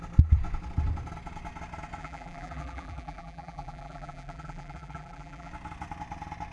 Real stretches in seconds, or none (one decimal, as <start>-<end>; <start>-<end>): 0.0-2.0; 5.5-6.5